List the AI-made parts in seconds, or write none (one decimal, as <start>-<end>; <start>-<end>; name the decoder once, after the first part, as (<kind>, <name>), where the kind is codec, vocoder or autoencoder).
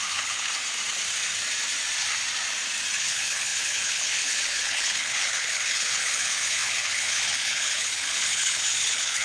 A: 0.0-0.5 (codec, HILCodec); 3.0-9.2